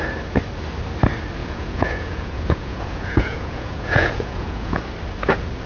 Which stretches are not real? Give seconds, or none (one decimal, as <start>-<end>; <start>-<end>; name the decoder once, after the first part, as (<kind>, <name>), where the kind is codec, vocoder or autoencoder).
1.4-4.8 (vocoder, Vocos)